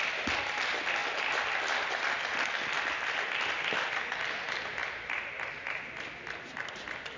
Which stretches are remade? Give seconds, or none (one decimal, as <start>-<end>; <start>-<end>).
none